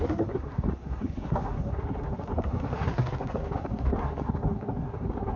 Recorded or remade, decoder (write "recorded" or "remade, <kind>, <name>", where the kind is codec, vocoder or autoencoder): remade, codec, SNAC